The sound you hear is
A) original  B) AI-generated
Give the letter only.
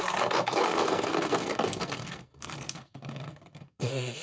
B